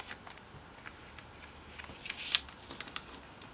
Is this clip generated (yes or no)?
no